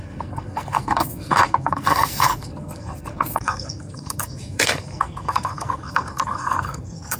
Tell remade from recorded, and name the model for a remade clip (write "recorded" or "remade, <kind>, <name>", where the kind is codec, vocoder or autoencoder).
remade, codec, SNAC